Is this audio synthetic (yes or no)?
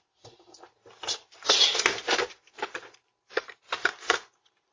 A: yes